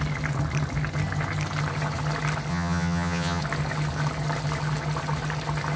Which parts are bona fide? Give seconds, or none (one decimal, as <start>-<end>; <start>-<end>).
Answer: 0.0-2.5; 3.4-5.8